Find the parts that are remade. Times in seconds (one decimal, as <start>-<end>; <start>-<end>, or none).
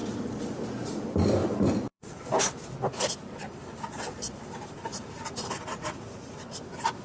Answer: 0.0-0.6; 1.4-2.2; 3.2-7.0